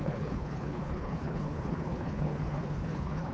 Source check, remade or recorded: remade